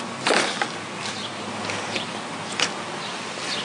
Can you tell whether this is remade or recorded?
recorded